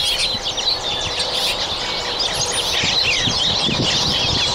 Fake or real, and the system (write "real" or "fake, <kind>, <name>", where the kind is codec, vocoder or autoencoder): real